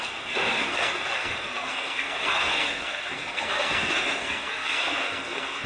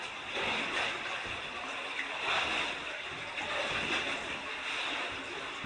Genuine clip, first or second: second